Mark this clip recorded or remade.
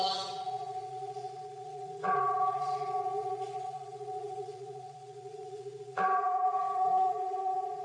remade